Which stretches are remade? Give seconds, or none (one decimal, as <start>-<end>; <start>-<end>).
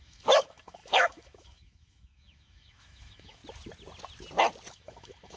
0.0-3.4; 4.7-5.4